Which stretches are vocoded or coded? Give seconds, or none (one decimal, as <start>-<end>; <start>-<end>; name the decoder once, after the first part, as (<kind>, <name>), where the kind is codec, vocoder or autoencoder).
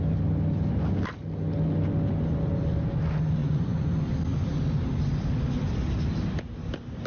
3.4-3.9 (vocoder, Vocos)